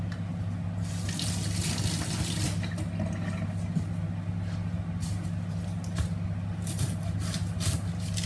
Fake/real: real